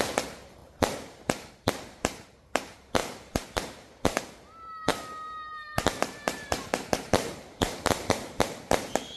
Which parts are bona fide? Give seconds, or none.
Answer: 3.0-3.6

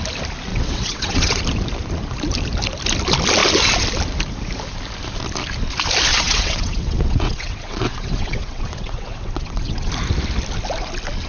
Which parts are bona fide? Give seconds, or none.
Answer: 0.0-0.5; 1.4-6.1; 9.9-11.3

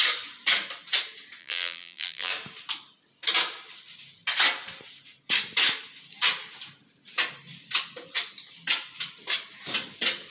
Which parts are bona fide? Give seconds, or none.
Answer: 0.0-1.4; 2.3-10.3

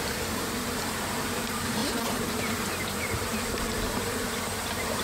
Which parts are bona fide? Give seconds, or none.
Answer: none